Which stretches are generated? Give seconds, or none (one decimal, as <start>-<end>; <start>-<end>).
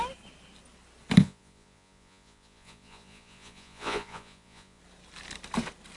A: 1.2-4.8